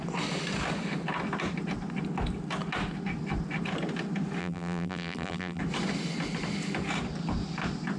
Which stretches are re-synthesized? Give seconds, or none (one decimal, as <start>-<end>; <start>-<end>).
4.4-5.6